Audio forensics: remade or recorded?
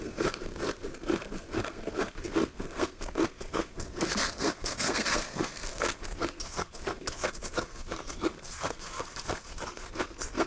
remade